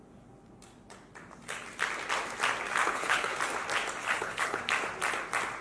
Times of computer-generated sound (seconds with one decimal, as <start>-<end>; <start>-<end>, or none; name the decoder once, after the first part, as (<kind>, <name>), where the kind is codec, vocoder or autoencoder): 2.8-3.4 (codec, HILCodec); 4.0-4.6